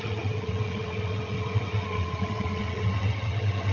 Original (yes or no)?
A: no